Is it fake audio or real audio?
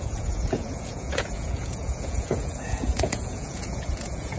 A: fake